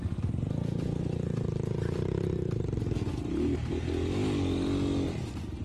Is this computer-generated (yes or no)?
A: no